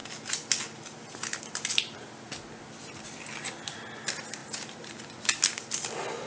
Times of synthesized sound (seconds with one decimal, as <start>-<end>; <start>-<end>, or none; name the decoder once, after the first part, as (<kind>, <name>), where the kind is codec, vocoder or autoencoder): none